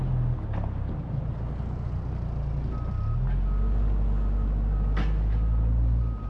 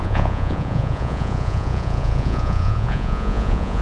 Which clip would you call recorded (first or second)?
first